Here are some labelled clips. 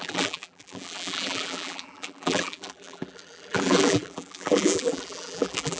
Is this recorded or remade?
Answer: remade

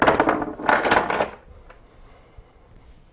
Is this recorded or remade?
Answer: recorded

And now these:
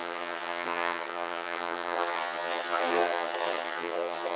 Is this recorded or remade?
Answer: remade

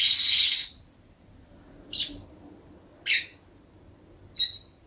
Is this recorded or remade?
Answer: recorded